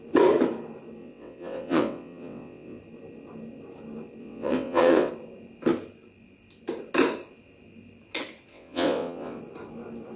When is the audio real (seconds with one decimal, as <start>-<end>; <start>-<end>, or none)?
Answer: 0.0-1.0; 2.8-4.2; 5.1-8.5; 9.4-10.2